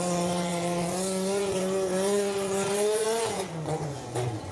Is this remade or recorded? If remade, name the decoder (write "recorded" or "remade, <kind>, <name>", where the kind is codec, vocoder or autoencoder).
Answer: remade, vocoder, Vocos